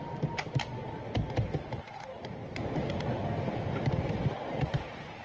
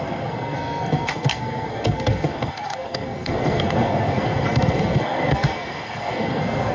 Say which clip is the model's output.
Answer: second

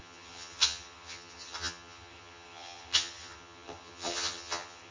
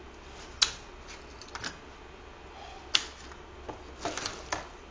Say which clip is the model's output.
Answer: first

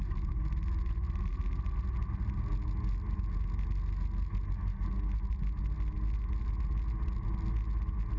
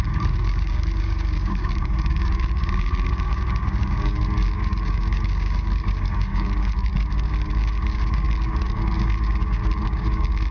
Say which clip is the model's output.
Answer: second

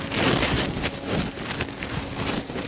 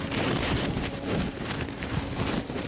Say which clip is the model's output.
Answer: second